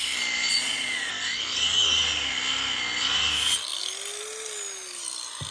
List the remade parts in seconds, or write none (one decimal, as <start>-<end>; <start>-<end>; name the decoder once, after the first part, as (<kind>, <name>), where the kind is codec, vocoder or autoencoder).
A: 0.5-1.1 (vocoder, Vocos)